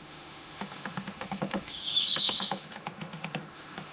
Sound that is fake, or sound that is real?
fake